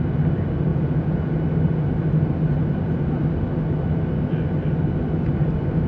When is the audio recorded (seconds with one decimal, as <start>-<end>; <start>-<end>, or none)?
0.0-0.7; 1.3-5.9